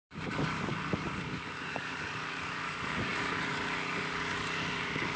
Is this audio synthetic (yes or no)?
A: yes